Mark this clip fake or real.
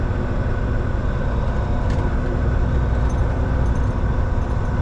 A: real